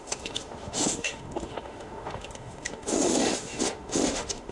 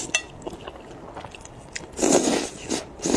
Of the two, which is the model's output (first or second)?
first